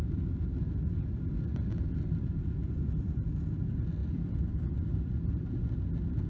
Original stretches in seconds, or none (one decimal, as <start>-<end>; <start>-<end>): 0.0-2.6; 3.3-4.0; 5.5-6.3